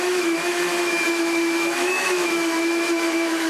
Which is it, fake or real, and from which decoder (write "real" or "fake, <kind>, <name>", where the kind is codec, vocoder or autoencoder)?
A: fake, autoencoder, DAC-VAE